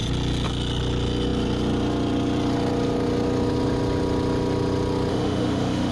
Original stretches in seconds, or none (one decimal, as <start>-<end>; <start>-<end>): 0.0-5.1